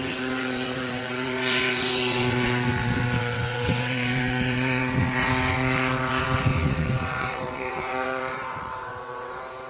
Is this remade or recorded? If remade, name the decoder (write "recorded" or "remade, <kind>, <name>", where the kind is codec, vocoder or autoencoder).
remade, vocoder, WaveNeXt